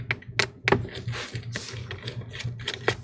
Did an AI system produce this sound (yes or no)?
no